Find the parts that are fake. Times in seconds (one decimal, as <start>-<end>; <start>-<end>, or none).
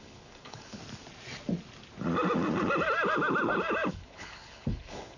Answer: 0.0-0.8; 3.9-5.2